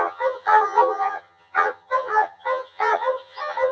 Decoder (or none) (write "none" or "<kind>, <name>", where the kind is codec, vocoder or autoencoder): vocoder, HiFi-GAN